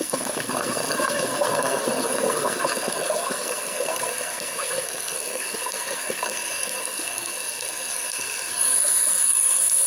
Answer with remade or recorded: remade